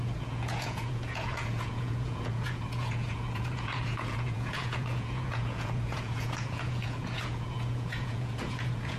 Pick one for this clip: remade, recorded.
remade